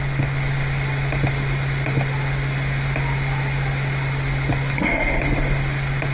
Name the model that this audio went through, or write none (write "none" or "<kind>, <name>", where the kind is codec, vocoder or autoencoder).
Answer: none